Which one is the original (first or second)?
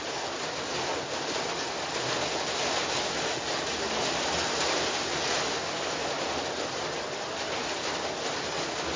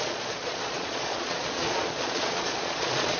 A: first